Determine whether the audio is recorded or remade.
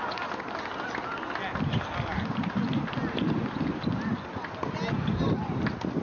recorded